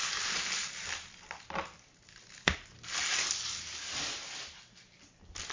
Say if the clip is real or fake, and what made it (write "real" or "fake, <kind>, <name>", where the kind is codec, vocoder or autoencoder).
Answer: real